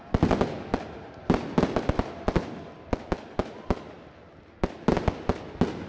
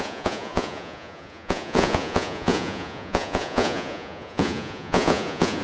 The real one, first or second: first